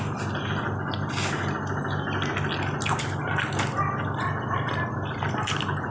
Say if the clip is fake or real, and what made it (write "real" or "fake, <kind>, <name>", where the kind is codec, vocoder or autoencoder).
real